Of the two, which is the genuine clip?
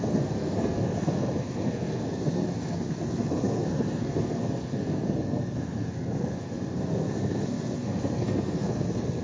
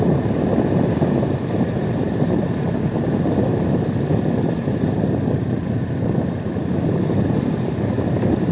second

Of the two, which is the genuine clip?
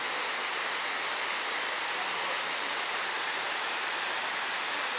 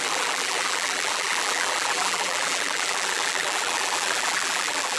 first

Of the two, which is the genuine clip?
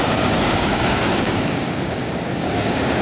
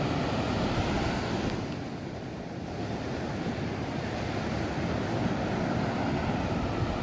second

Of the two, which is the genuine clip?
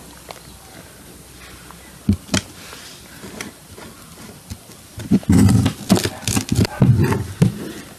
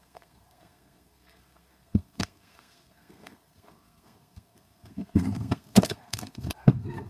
first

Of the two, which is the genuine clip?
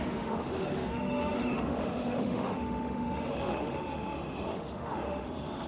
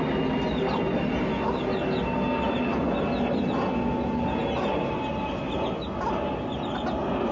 second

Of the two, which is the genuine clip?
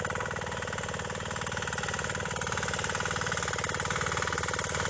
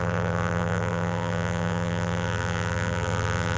first